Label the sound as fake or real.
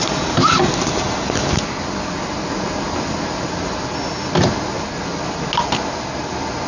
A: real